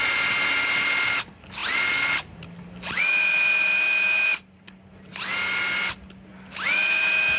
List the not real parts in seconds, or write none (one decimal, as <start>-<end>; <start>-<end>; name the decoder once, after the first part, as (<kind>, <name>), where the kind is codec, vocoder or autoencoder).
none